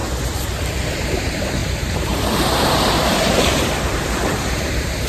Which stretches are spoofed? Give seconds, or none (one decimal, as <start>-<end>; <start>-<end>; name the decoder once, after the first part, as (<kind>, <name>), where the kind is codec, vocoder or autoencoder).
0.9-5.1 (vocoder, BigVGAN v2)